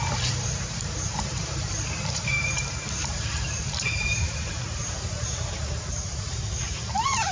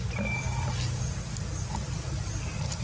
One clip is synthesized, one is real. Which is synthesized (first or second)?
first